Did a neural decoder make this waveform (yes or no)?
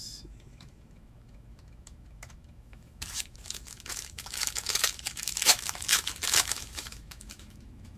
yes